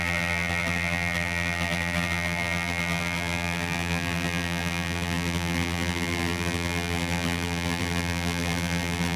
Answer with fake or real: fake